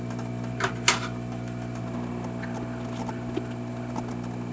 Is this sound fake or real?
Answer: real